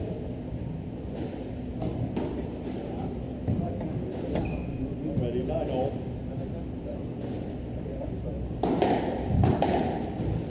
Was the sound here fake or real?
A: real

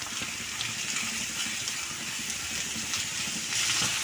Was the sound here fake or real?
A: real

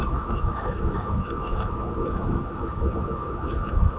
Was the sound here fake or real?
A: fake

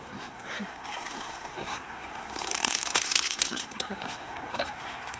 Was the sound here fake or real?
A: fake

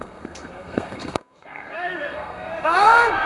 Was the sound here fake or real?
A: fake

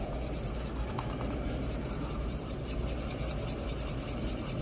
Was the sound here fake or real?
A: real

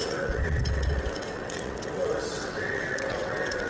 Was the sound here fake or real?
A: fake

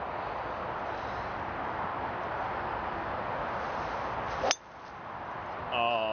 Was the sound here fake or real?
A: real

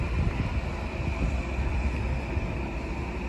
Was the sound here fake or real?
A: real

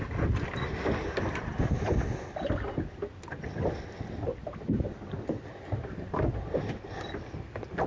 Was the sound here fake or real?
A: real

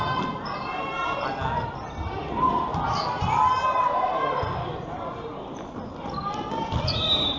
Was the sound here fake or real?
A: real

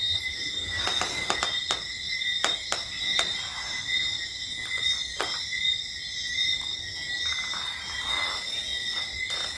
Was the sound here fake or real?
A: real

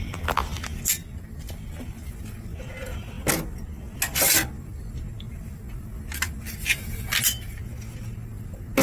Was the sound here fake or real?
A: real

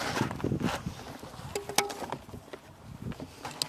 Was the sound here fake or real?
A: real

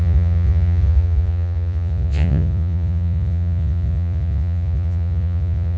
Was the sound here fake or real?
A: fake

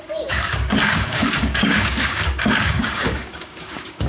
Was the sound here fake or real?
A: fake